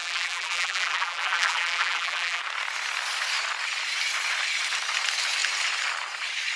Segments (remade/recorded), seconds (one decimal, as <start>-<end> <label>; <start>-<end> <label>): 0.0-2.4 remade; 2.4-6.6 recorded